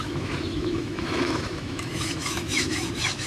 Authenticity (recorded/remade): remade